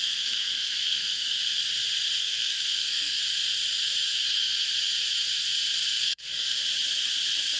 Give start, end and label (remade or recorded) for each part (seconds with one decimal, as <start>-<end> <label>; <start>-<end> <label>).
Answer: 0.0-1.4 remade; 1.4-2.2 recorded; 2.2-3.2 remade; 3.2-6.0 recorded; 6.0-6.6 remade; 6.6-7.6 recorded